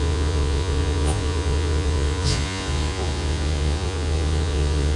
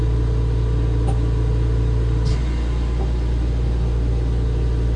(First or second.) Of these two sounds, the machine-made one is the first